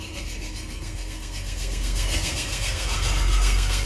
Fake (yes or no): yes